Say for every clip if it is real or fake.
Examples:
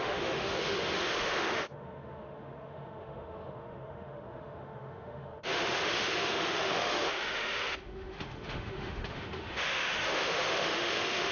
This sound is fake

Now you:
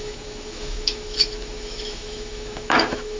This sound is fake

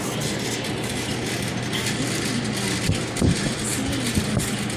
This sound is real